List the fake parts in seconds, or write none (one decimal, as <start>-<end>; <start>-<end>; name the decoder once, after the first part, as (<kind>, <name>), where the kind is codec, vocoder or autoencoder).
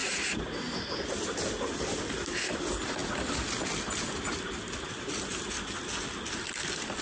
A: 0.0-0.6 (vocoder, Vocos)